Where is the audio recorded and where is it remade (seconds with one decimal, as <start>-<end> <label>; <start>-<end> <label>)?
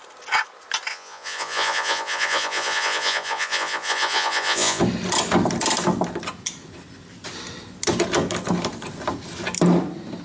0.0-0.9 recorded; 0.9-4.8 remade; 4.8-10.2 recorded